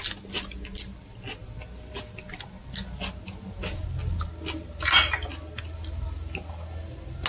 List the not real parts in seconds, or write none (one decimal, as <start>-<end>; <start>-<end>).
none